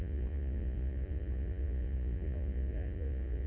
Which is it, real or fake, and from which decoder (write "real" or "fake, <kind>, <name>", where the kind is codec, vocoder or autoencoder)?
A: fake, vocoder, Vocos